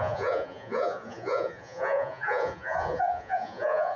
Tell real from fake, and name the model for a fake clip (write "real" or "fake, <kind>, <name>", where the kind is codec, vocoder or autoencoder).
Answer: fake, vocoder, Vocos